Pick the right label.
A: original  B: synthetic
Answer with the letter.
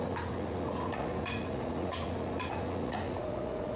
B